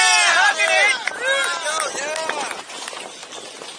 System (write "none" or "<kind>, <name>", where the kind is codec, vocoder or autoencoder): none